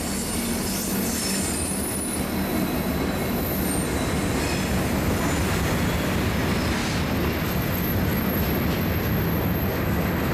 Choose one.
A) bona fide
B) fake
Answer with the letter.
A